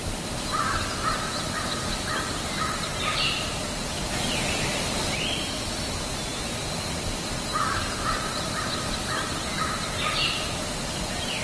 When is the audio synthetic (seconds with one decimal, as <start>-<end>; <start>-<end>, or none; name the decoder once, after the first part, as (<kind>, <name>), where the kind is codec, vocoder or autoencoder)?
7.5-9.5 (vocoder, BigVGAN v2)